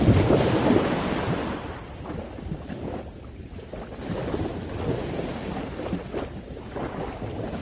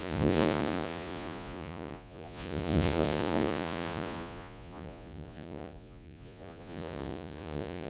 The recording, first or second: first